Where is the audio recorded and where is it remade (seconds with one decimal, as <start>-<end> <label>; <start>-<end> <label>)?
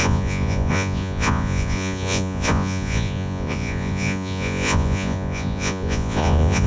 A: 0.0-6.7 remade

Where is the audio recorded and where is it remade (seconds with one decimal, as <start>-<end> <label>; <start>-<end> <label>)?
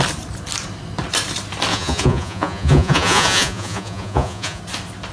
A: 0.0-1.7 recorded; 1.7-4.6 remade; 4.6-5.1 recorded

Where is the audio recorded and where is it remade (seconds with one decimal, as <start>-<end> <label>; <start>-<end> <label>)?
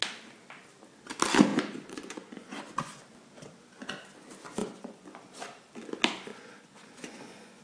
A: 0.0-1.5 recorded; 1.5-3.0 remade; 3.0-4.6 recorded; 4.6-5.2 remade; 5.2-6.3 recorded; 6.3-7.6 remade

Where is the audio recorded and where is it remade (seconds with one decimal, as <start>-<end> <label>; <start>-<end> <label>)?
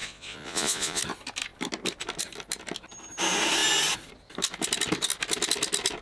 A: 0.0-1.0 remade; 1.0-6.0 recorded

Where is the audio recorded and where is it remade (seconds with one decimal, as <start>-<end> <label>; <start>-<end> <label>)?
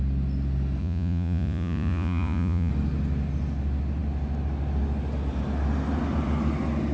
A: 0.0-0.8 recorded; 0.8-2.7 remade; 2.7-6.9 recorded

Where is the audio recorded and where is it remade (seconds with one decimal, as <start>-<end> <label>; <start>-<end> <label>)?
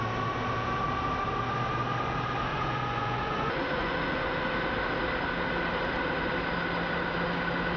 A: 0.0-2.5 recorded; 2.5-4.3 remade; 4.3-7.8 recorded